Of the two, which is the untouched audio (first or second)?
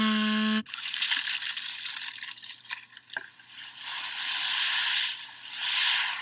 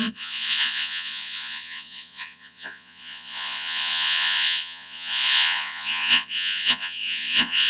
first